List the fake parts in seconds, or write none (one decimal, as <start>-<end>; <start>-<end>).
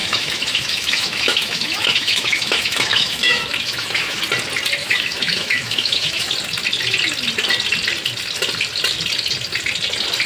0.0-4.2; 4.8-6.3